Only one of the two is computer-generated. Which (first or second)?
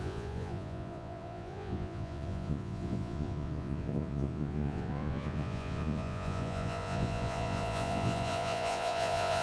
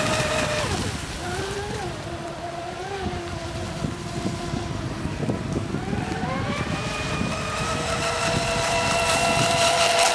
first